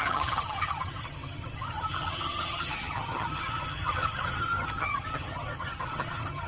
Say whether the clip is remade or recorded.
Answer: remade